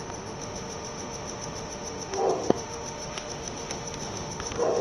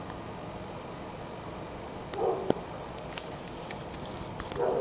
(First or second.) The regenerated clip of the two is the first